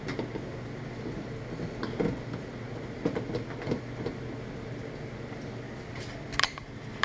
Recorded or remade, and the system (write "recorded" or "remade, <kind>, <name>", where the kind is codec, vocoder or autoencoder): recorded